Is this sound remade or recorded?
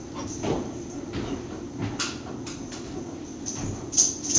recorded